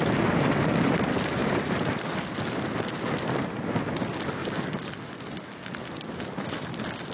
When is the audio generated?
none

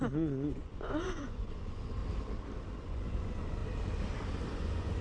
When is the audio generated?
0.0-2.0 (vocoder, Vocos); 2.8-3.6; 4.5-5.0

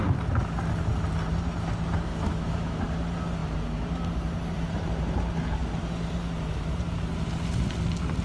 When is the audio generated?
2.1-2.8 (autoencoder, DAC-VAE)

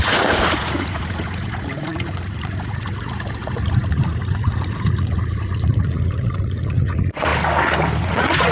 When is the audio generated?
0.0-7.3 (vocoder, Vocos); 8.0-8.5